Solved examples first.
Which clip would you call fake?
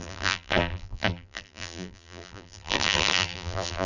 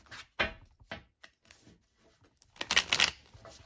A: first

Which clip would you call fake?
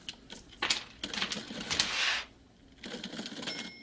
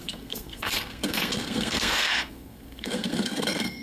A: second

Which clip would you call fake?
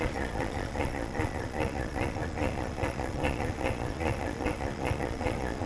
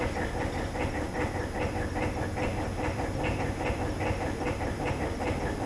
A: first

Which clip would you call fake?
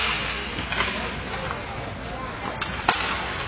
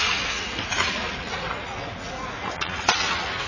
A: second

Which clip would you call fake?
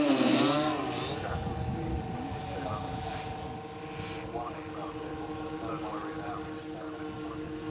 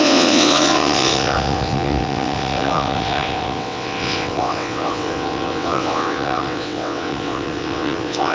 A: second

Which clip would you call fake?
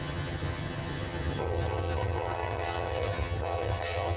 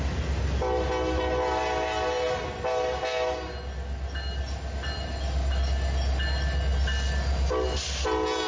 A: first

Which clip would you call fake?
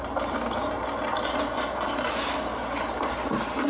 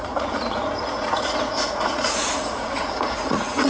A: second